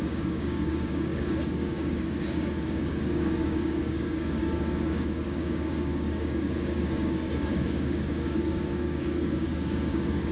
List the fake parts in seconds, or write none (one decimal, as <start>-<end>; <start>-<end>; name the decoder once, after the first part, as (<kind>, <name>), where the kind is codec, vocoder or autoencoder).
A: 0.0-10.3 (codec, DAC)